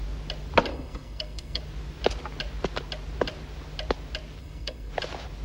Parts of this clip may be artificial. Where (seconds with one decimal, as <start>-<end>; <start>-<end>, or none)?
0.7-1.6; 4.4-4.9